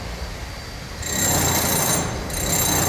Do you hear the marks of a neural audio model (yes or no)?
no